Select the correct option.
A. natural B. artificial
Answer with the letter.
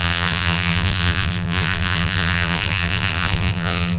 B